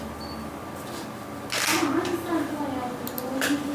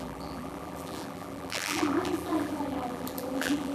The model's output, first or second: second